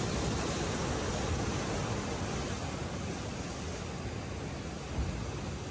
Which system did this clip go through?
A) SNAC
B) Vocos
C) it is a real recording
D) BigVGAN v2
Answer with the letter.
C